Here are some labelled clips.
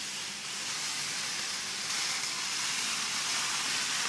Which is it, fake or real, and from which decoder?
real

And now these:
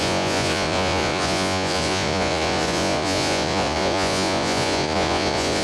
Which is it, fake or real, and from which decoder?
fake, vocoder, Vocos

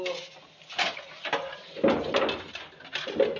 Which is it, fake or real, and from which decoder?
real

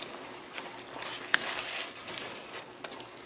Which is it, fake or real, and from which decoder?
real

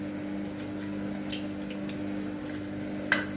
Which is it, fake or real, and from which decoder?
real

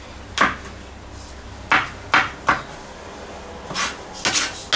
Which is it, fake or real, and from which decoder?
real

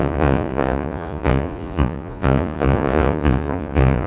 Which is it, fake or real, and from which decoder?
fake, vocoder, Vocos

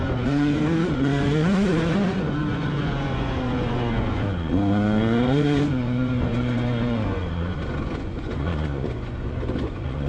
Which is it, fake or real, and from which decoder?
fake, vocoder, Vocos